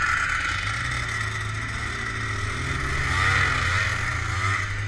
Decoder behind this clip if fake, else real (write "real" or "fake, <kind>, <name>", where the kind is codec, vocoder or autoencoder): real